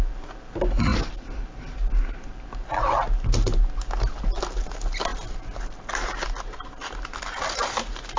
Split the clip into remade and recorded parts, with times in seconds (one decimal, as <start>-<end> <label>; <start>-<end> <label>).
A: 0.0-8.2 recorded